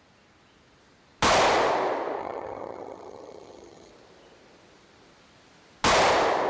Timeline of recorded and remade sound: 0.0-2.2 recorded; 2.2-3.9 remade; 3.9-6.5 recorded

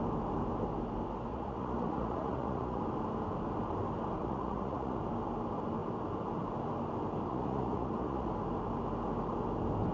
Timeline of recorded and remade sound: 0.0-1.3 recorded; 1.3-2.8 remade; 2.8-4.2 recorded; 4.2-5.0 remade; 5.0-7.3 recorded; 7.3-8.3 remade; 8.3-9.9 recorded

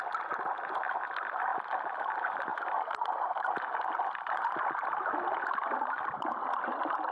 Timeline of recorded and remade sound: 0.0-1.5 remade; 1.5-2.0 recorded; 2.0-2.5 remade; 2.5-7.1 recorded

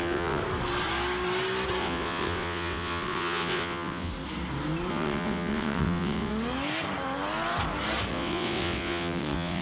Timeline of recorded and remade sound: 0.0-0.4 remade; 0.4-1.8 recorded; 1.8-4.1 remade; 4.1-4.9 recorded; 4.9-6.3 remade; 6.3-8.1 recorded; 8.1-9.6 remade

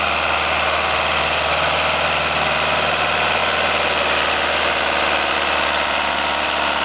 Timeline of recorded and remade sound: 0.0-6.8 recorded

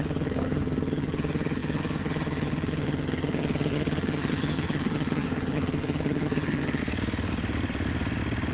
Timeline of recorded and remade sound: 0.0-6.8 remade; 6.8-8.5 recorded